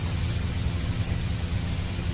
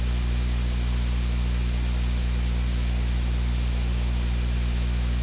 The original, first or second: second